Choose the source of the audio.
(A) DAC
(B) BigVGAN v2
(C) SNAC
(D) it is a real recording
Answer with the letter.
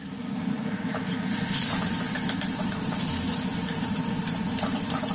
B